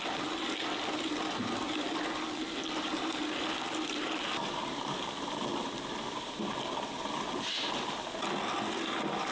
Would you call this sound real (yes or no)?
yes